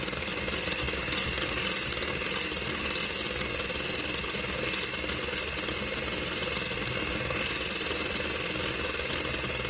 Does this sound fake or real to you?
real